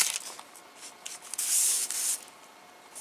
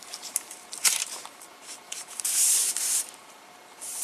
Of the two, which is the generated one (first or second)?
second